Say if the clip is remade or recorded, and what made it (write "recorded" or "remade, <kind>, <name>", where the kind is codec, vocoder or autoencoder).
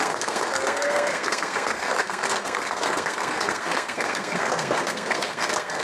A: remade, codec, SNAC